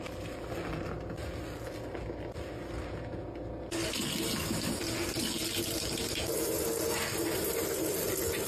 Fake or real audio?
real